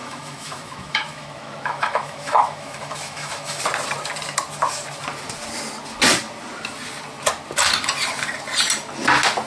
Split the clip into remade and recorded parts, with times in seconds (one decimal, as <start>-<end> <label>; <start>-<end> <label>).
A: 0.0-3.6 remade; 3.6-9.5 recorded